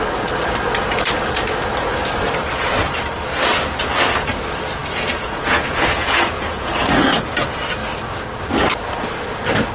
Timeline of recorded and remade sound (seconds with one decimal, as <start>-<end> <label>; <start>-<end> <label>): 0.0-4.8 recorded; 4.8-6.7 remade; 6.7-9.7 recorded